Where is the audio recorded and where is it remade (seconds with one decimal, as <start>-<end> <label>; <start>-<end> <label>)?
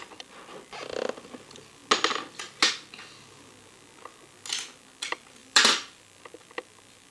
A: 0.0-5.4 recorded; 5.4-6.2 remade; 6.2-7.1 recorded